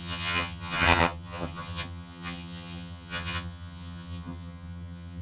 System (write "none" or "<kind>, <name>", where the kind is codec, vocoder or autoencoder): vocoder, HiFi-GAN